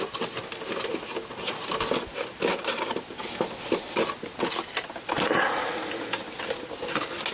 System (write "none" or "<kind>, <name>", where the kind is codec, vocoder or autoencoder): none